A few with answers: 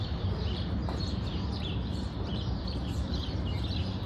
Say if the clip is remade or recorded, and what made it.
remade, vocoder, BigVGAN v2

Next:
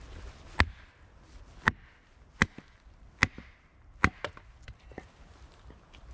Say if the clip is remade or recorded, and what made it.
recorded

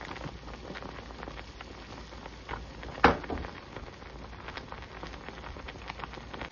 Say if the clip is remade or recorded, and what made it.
recorded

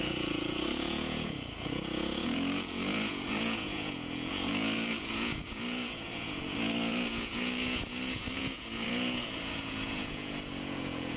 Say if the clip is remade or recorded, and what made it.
remade, vocoder, Vocos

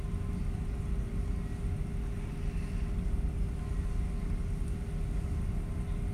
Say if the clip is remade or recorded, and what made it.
recorded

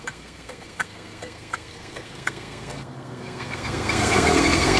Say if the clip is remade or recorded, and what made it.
remade, codec, SNAC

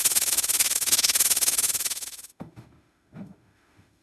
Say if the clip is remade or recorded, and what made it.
remade, autoencoder, DAC-VAE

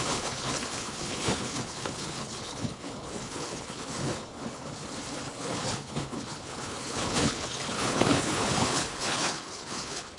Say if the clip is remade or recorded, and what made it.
remade, codec, HILCodec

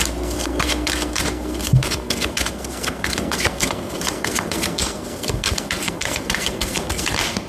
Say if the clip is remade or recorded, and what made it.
remade, codec, SNAC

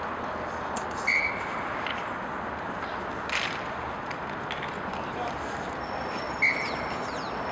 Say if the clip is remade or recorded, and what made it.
recorded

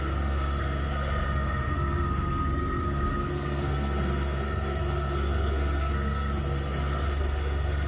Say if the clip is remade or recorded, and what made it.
remade, codec, SNAC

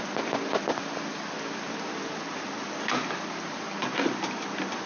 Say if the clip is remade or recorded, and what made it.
recorded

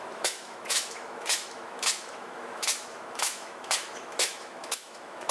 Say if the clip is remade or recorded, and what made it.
remade, autoencoder, DAC-VAE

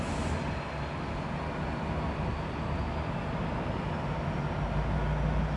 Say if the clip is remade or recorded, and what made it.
recorded